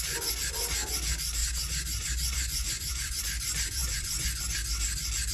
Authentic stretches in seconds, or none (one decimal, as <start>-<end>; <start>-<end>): 0.0-1.4; 3.2-3.8; 4.4-5.3